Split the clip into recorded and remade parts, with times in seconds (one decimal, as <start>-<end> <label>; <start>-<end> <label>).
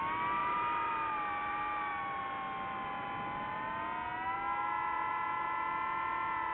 0.0-0.4 recorded; 0.4-2.2 remade; 2.2-6.5 recorded